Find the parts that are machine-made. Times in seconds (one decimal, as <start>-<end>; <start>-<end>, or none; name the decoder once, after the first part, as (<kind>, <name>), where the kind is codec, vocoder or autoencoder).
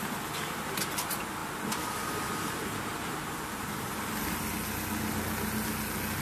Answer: none